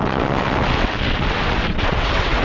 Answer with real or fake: fake